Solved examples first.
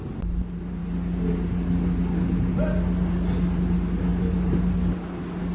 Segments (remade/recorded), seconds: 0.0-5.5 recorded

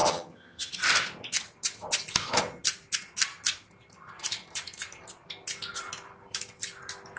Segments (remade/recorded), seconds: 0.0-0.7 remade; 0.7-7.2 recorded